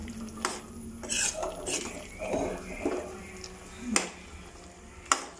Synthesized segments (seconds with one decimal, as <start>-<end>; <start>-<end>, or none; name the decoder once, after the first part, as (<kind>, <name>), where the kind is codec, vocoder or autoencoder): none